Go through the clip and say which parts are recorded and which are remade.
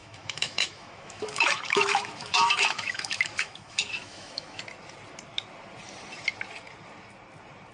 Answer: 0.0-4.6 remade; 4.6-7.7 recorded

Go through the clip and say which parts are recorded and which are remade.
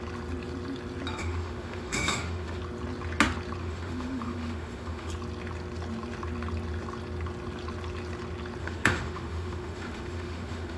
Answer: 0.0-1.2 recorded; 1.2-2.6 remade; 2.6-3.6 recorded; 3.6-5.1 remade; 5.1-8.6 recorded; 8.6-10.8 remade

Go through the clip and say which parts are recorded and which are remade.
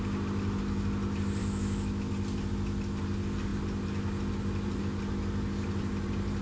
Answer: 0.0-1.4 recorded; 1.4-2.1 remade; 2.1-6.4 recorded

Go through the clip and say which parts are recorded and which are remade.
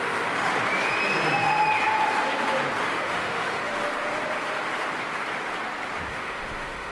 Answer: 0.0-0.5 remade; 0.5-2.8 recorded; 2.8-3.7 remade; 3.7-6.1 recorded; 6.1-6.9 remade